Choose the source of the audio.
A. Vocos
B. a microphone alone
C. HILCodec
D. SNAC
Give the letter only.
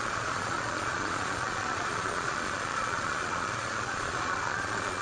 A